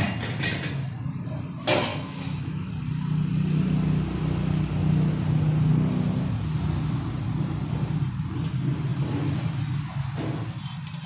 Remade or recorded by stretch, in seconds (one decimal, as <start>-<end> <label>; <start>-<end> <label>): 0.0-1.9 recorded; 1.9-2.7 remade; 2.7-11.1 recorded